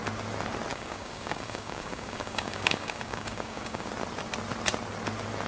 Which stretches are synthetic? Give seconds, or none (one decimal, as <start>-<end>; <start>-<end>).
0.7-3.9